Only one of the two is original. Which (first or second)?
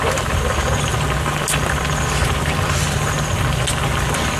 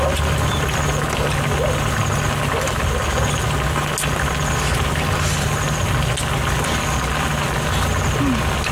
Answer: second